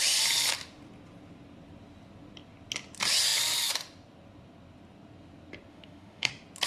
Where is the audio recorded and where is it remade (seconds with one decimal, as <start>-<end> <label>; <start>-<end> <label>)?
0.0-5.7 recorded; 5.7-6.3 remade; 6.3-6.7 recorded